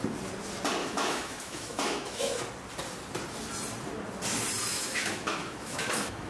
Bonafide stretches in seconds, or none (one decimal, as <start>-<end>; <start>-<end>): 0.0-0.8; 2.4-4.7